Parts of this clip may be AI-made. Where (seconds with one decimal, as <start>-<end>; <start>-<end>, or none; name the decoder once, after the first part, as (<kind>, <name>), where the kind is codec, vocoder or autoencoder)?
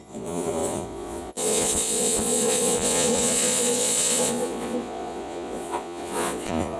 0.0-6.8 (vocoder, Vocos)